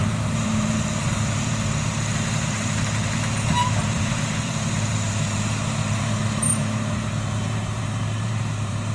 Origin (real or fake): fake